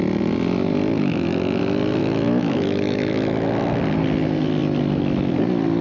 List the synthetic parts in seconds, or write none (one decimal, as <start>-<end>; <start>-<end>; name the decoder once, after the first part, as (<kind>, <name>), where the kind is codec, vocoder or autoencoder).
0.9-1.6 (autoencoder, DAC-VAE); 2.0-3.8